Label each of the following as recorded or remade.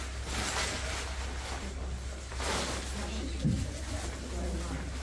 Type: recorded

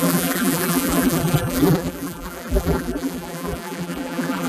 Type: remade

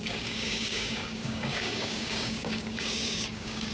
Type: remade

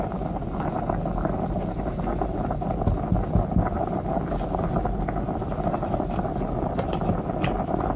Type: recorded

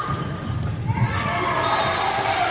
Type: recorded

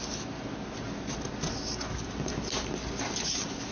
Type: recorded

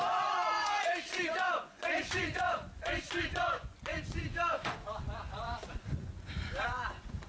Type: remade